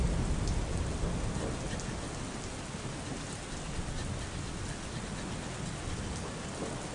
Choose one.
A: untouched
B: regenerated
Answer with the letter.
A